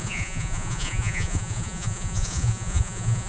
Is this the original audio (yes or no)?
no